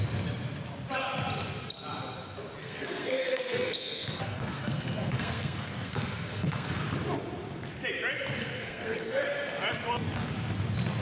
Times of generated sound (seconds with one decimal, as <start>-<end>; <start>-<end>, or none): 2.6-6.8; 8.4-9.2